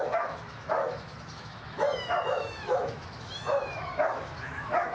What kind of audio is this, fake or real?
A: fake